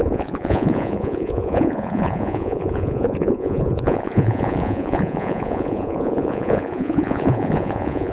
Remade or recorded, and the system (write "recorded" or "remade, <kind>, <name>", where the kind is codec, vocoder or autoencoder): remade, vocoder, Vocos